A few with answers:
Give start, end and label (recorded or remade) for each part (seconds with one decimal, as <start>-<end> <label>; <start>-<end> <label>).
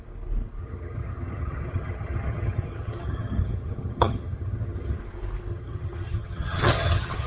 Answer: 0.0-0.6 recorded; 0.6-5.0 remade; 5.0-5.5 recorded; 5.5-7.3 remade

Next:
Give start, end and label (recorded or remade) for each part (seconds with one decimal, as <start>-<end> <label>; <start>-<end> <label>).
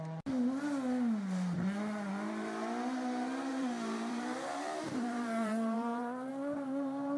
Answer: 0.0-3.5 recorded; 3.5-6.3 remade; 6.3-7.2 recorded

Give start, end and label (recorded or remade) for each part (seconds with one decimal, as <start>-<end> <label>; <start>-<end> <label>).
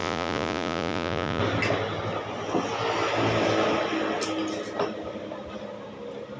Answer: 0.0-1.4 remade; 1.4-6.4 recorded